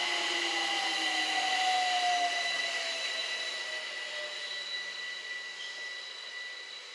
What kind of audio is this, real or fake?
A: real